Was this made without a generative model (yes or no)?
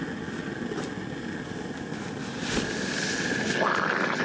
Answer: yes